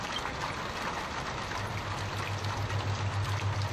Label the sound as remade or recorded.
recorded